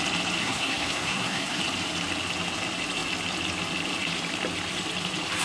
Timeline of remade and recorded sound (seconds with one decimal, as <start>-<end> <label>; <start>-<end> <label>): 0.0-0.4 recorded; 0.4-1.6 remade; 1.6-5.4 recorded